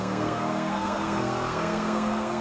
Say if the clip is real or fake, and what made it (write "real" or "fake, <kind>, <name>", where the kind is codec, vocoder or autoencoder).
fake, codec, SNAC